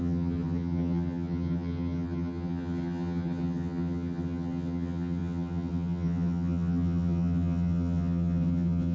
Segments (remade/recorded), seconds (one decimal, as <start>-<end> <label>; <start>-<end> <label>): 0.0-8.9 remade